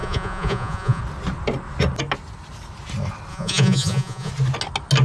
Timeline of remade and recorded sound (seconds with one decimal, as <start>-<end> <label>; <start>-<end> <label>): 0.0-1.0 remade; 1.0-3.3 recorded; 3.3-4.3 remade; 4.3-5.0 recorded